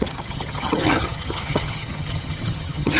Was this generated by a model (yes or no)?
yes